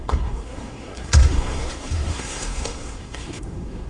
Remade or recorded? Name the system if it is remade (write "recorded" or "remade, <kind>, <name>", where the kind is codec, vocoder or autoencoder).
remade, codec, SNAC